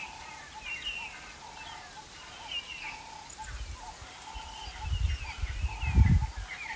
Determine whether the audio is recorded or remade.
recorded